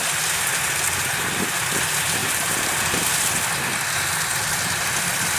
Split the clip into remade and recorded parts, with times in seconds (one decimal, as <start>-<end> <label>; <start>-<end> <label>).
0.0-5.4 recorded